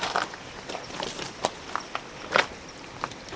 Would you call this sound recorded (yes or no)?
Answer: yes